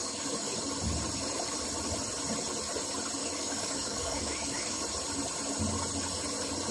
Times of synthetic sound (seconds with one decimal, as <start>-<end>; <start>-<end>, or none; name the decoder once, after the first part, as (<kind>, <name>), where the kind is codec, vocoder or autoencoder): 0.0-0.6 (codec, DAC); 3.2-4.8